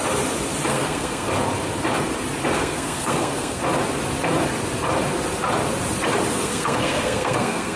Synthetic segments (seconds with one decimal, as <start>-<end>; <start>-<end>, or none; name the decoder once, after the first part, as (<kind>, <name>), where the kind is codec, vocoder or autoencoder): 0.7-1.3 (codec, SNAC); 2.6-3.6; 6.4-7.8